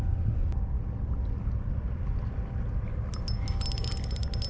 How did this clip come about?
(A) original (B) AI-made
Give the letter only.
A